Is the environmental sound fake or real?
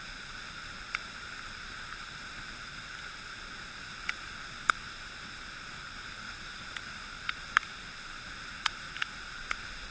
real